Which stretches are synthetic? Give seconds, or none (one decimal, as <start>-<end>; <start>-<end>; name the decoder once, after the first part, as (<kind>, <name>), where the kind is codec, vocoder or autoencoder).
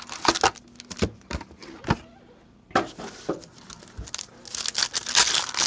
none